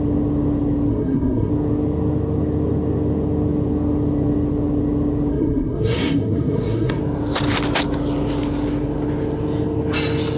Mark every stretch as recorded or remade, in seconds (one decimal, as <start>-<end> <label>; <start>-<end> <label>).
0.0-0.9 recorded; 0.9-1.5 remade; 1.5-5.3 recorded; 5.3-7.0 remade; 7.0-10.4 recorded